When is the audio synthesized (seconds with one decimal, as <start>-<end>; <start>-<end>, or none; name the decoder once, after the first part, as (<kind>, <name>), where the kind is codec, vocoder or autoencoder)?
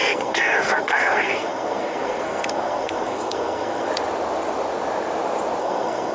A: 0.0-3.9 (codec, SNAC); 5.6-6.1